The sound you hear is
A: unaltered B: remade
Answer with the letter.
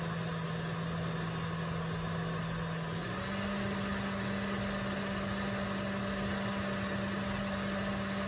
A